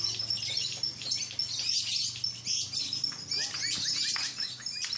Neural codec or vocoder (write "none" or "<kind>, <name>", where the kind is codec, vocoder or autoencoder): none